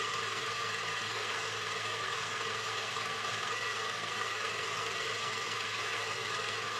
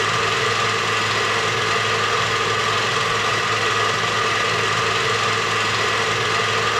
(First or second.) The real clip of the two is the second